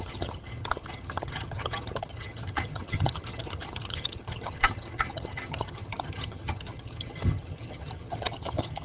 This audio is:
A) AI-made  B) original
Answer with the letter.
A